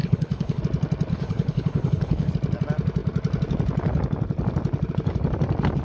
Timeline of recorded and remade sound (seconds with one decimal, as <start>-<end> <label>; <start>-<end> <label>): 0.0-0.6 remade; 0.6-1.1 recorded; 1.1-2.3 remade; 2.3-5.8 recorded